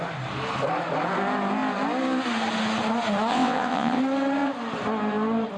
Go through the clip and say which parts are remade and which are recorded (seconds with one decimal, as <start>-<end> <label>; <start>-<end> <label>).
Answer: 0.0-3.3 recorded; 3.3-4.0 remade; 4.0-5.6 recorded